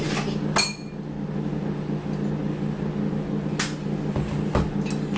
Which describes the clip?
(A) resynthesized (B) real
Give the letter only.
B